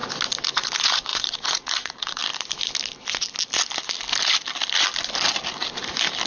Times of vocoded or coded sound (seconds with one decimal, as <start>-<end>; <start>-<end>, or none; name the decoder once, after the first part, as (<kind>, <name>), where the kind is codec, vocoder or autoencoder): 0.5-2.2 (vocoder, Vocos)